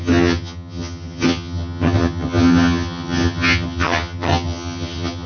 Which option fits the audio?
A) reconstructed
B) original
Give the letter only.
A